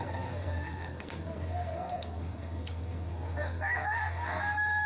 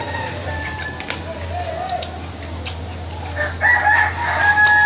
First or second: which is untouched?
second